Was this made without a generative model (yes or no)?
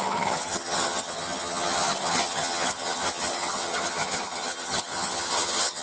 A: no